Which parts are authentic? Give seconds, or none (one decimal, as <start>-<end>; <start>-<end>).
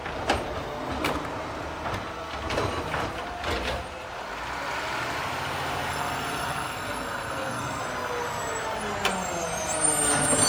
0.0-5.9; 7.8-10.5